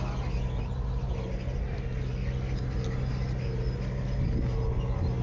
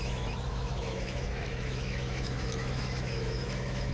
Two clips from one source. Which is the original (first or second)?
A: first